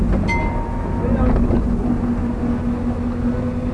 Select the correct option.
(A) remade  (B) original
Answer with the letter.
B